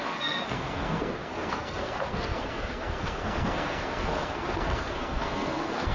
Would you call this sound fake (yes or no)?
yes